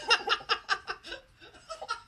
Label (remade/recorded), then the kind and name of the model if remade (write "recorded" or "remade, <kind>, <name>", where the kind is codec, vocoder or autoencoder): recorded